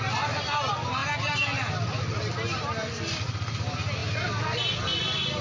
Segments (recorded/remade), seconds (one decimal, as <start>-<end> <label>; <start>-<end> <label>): 0.0-5.4 recorded